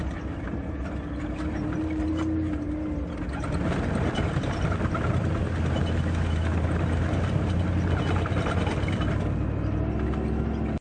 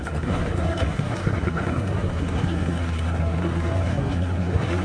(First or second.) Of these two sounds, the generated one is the second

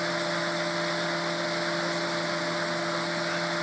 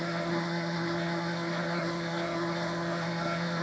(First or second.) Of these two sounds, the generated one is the second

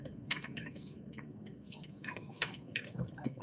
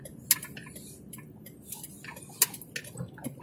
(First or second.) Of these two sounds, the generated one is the first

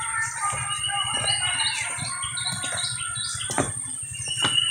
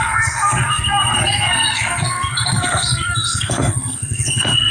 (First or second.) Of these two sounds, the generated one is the second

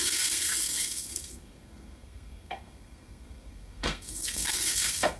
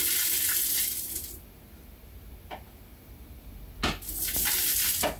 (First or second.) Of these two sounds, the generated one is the first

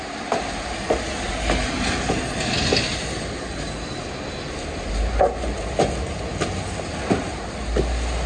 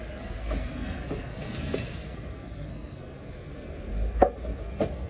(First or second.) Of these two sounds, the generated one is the second